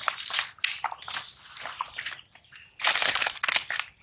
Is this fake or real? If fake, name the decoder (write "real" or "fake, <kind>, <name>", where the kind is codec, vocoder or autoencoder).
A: real